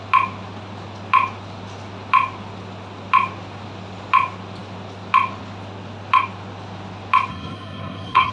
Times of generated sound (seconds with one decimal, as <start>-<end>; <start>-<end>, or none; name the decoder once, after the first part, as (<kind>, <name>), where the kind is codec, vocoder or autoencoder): 7.3-8.3 (codec, SNAC)

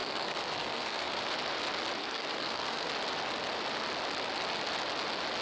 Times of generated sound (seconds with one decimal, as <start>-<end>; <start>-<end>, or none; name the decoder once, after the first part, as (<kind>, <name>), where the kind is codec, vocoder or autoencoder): 0.0-1.2 (codec, SNAC); 2.0-2.9

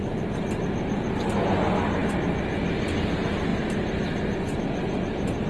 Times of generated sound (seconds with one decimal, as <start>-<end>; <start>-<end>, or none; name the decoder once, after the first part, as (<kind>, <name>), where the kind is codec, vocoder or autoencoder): none